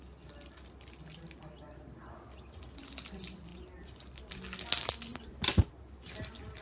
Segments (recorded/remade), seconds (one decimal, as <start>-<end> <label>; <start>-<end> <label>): 0.0-6.6 recorded